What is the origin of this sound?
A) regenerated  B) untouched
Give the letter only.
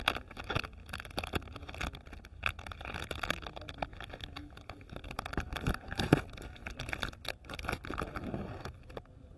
B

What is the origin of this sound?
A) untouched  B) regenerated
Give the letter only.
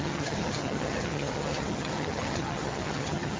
B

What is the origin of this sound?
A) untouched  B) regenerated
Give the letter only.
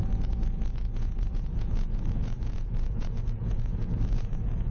B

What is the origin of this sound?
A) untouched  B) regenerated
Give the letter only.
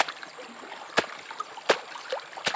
A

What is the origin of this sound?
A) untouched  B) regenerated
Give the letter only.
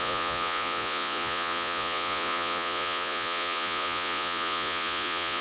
B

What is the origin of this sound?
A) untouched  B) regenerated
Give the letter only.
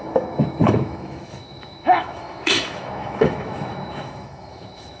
B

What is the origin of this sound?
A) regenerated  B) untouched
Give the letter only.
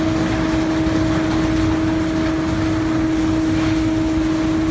B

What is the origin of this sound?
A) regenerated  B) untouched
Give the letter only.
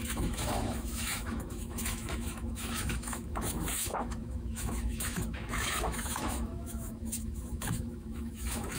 A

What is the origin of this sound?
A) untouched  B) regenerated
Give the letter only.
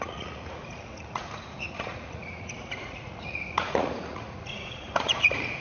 B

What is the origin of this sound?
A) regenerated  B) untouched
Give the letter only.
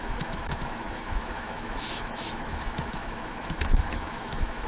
A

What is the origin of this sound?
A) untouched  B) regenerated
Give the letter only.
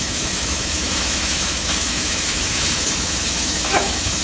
B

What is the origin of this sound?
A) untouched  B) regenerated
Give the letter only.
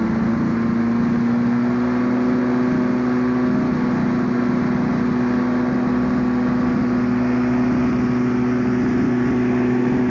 A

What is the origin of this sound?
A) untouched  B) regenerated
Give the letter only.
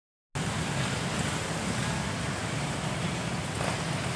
A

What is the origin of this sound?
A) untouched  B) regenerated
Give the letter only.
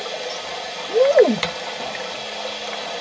A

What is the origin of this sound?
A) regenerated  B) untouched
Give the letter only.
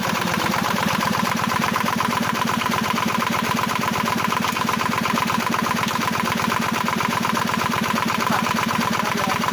A